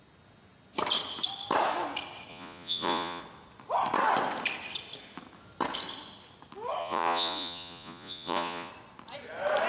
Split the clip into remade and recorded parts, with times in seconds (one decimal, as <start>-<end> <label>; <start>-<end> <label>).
0.0-2.3 recorded; 2.3-3.2 remade; 3.2-6.8 recorded; 6.8-8.7 remade; 8.7-9.7 recorded